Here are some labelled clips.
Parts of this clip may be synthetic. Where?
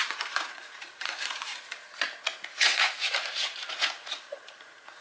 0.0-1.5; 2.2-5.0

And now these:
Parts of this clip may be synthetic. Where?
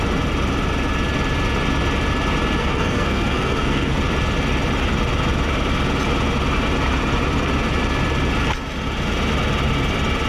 2.6-4.0